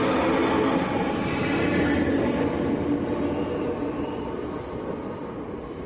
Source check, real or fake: real